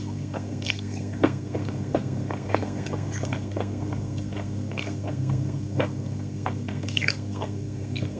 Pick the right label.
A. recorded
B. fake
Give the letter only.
B